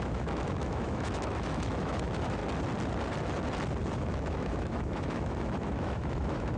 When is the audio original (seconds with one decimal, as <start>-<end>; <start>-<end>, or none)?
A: 2.4-3.9